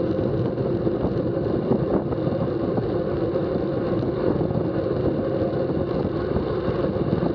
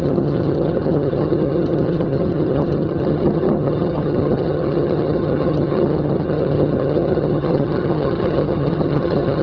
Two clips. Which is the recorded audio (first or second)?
first